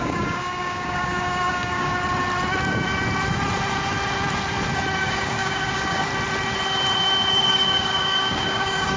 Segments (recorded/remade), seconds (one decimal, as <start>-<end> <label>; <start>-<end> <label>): 0.0-1.9 remade; 1.9-5.0 recorded; 5.0-6.1 remade; 6.1-7.3 recorded; 7.3-9.0 remade